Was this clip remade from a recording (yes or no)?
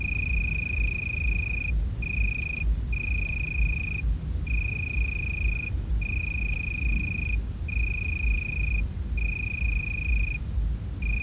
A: no